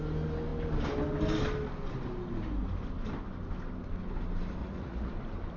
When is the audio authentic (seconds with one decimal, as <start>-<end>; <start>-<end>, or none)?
0.0-4.6; 5.1-5.6